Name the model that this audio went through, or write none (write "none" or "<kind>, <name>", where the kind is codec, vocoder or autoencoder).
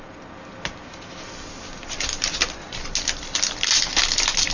none